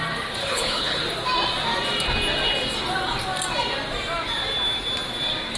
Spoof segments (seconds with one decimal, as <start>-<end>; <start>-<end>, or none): 0.4-1.0